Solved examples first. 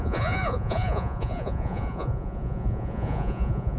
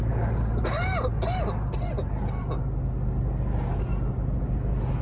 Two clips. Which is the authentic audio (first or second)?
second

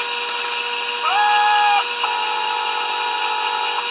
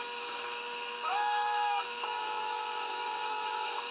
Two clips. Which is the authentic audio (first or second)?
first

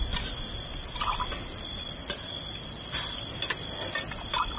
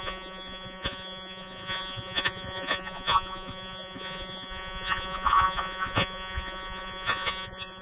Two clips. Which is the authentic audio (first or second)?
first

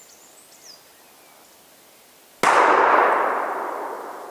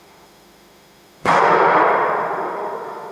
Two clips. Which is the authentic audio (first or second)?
first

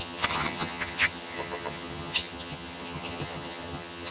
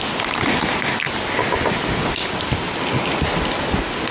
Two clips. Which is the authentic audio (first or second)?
second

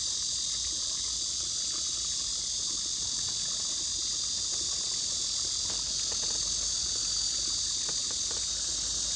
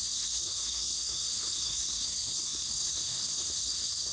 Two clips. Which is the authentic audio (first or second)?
first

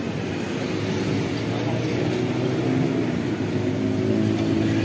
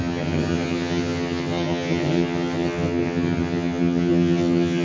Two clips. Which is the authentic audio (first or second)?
first